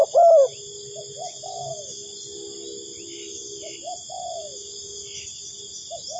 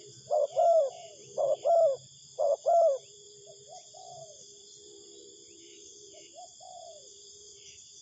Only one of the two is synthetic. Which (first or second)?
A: second